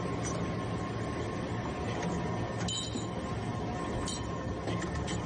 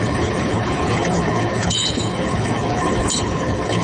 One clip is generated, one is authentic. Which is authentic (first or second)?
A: first